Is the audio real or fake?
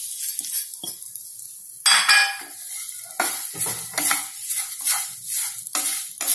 real